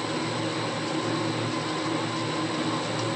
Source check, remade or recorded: recorded